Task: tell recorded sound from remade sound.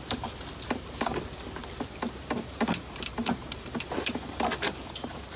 remade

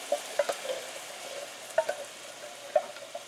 recorded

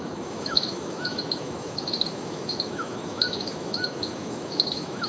remade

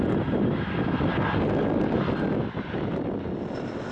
recorded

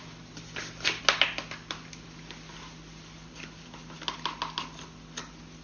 recorded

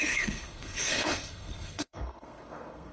remade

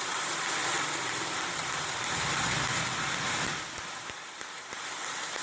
recorded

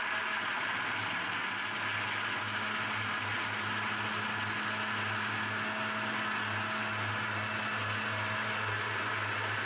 recorded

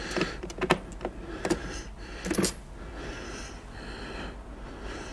recorded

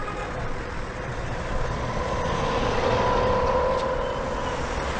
remade